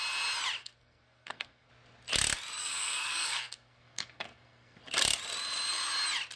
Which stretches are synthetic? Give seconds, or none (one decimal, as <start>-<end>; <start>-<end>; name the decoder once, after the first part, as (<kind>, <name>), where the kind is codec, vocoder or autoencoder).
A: 0.6-1.7 (codec, SNAC); 2.6-4.8